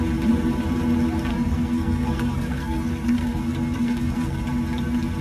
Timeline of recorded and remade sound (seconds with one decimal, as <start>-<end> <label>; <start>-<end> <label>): 0.0-1.3 recorded; 1.3-4.4 remade; 4.4-5.2 recorded